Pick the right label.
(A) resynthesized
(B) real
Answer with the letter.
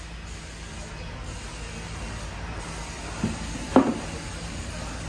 B